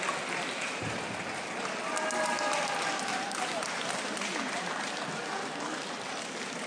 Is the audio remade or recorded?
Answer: recorded